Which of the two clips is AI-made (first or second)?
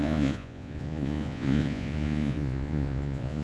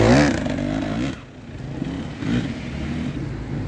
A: first